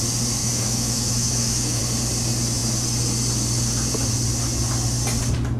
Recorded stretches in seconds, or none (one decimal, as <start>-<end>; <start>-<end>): 0.0-0.4; 1.8-5.6